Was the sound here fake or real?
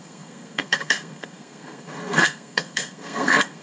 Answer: fake